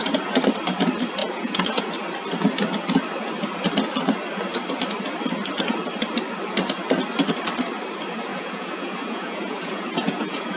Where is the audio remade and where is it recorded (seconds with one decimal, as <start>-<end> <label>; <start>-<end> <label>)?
0.0-1.2 recorded; 1.2-1.9 remade; 1.9-8.3 recorded; 8.3-10.6 remade

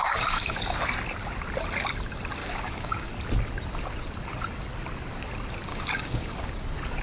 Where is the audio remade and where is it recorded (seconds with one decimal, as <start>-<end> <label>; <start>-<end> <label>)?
0.0-0.6 remade; 0.6-2.4 recorded; 2.4-3.1 remade; 3.1-5.7 recorded; 5.7-6.5 remade; 6.5-7.0 recorded

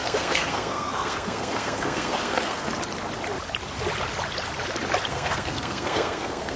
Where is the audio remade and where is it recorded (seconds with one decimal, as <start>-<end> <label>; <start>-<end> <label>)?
0.0-2.7 remade; 2.7-5.1 recorded; 5.1-6.6 remade

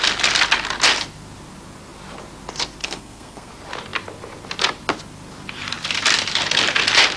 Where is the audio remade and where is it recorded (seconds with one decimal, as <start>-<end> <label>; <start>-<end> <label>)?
0.0-2.8 recorded; 2.8-3.5 remade; 3.5-7.2 recorded

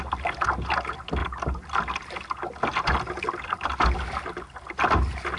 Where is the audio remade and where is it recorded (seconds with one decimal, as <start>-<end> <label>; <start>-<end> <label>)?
0.0-5.4 recorded

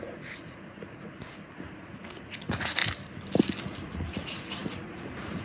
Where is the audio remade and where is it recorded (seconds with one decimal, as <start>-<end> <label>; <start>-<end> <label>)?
0.0-2.8 remade; 2.8-3.7 recorded; 3.7-5.4 remade